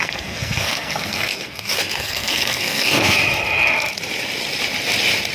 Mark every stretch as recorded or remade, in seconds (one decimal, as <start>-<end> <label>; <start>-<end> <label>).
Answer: 0.0-3.2 remade; 3.2-5.3 recorded